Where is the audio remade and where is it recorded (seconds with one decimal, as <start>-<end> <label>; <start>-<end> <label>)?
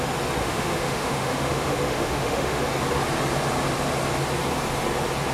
0.0-0.4 recorded; 0.4-2.6 remade; 2.6-5.3 recorded